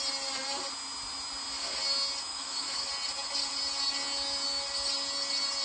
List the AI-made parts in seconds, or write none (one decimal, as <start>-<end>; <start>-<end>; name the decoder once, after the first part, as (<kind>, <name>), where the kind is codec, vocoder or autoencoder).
2.3-2.9 (autoencoder, DAC-VAE)